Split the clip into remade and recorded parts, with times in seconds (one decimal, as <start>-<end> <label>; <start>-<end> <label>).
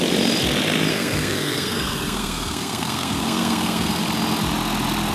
0.0-0.9 recorded; 0.9-4.0 remade; 4.0-5.1 recorded